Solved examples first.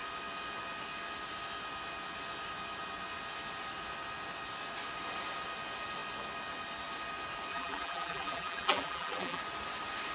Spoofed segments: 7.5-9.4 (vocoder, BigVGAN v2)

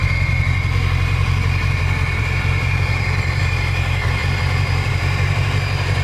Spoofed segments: 0.0-3.4 (vocoder, BigVGAN v2)